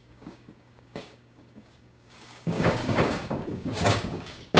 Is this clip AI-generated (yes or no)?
yes